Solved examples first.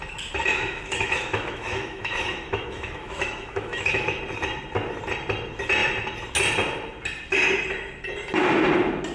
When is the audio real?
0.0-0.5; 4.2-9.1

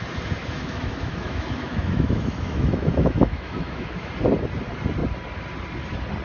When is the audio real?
0.0-0.4; 4.1-6.2

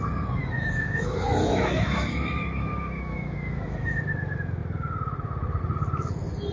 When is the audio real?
0.0-0.4; 4.0-6.5